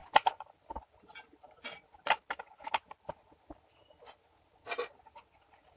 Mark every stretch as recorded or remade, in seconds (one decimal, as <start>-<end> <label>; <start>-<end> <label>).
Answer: 0.0-5.8 recorded